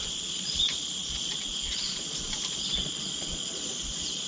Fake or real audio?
fake